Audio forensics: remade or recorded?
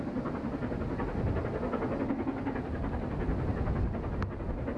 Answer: recorded